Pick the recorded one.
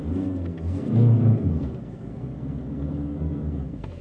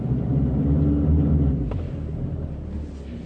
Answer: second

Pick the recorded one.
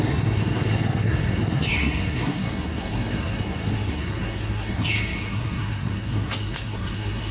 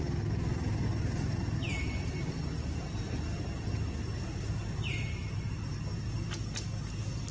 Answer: second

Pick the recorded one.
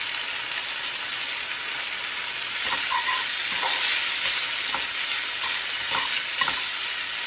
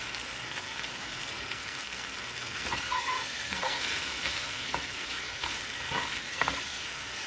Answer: first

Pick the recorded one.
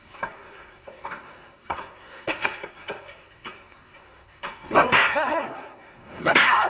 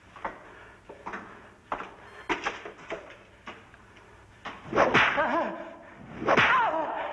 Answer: second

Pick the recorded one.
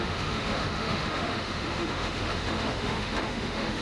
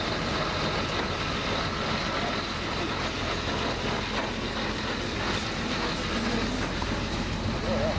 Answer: second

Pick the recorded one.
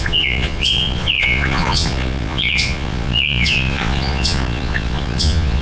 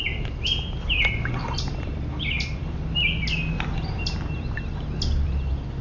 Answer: second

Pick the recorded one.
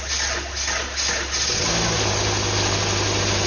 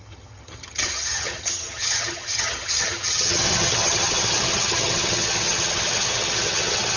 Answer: first